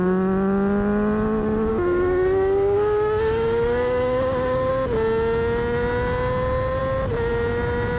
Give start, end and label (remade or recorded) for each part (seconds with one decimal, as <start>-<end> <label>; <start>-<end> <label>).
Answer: 0.0-1.7 recorded; 1.7-4.7 remade; 4.7-8.0 recorded